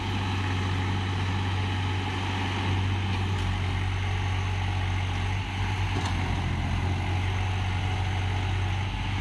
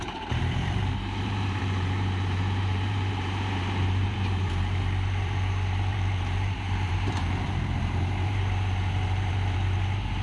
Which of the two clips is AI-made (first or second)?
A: second